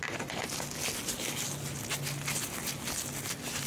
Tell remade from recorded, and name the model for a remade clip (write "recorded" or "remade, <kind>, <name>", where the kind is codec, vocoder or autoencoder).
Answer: recorded